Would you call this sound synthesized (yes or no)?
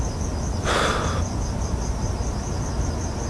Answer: no